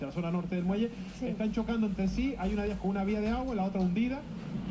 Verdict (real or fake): real